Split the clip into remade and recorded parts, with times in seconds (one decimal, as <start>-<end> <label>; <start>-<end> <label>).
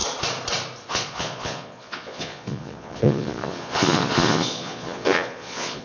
0.0-0.9 recorded; 0.9-5.8 remade